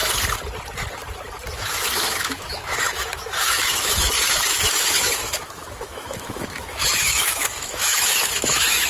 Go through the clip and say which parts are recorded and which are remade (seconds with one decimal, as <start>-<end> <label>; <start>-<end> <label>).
0.0-1.5 recorded; 1.5-8.9 remade